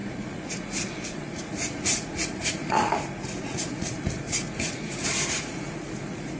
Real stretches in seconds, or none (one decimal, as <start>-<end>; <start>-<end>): none